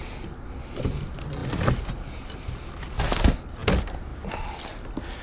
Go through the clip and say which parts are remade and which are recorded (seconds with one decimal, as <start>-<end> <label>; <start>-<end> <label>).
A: 0.0-5.2 recorded